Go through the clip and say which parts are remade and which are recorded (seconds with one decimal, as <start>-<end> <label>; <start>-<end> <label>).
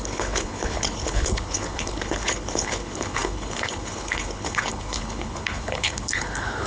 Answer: 0.0-6.7 remade